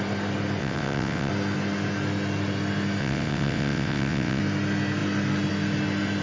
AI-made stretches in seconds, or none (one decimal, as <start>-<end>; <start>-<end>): 0.6-1.3; 3.0-4.4